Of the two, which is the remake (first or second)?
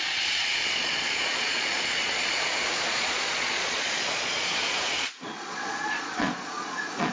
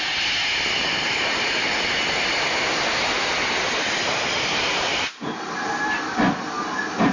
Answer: first